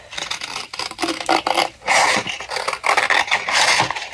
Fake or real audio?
real